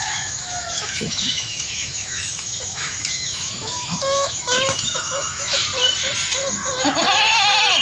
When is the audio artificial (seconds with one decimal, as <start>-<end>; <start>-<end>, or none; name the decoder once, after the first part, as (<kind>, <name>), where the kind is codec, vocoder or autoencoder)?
0.0-5.7 (autoencoder, DAC-VAE)